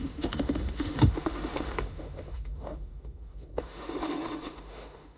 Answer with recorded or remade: remade